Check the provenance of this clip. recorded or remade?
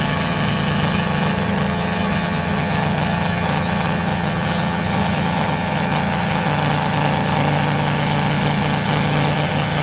remade